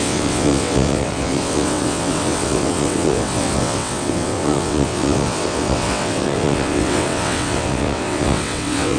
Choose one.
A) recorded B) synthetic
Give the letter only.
B